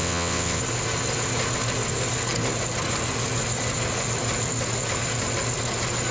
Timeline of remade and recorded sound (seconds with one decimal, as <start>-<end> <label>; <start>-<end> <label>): 0.0-0.6 remade; 0.6-6.1 recorded